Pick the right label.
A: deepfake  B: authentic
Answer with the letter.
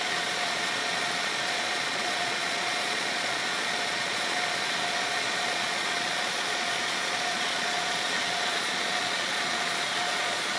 A